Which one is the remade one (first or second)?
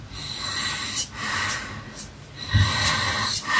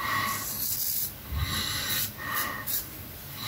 first